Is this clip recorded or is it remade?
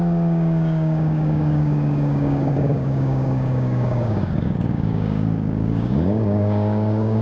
remade